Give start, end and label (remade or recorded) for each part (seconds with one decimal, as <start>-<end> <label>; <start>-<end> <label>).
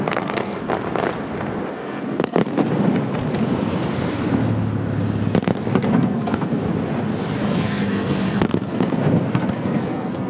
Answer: 0.0-0.7 remade; 0.7-1.7 recorded; 1.7-2.4 remade; 2.4-5.9 recorded; 5.9-6.6 remade; 6.6-7.5 recorded; 7.5-10.3 remade